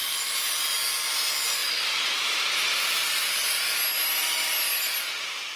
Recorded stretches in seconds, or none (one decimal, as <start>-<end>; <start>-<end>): 0.0-5.6